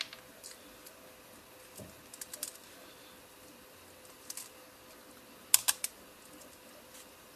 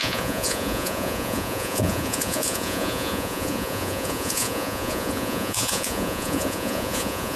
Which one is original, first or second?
first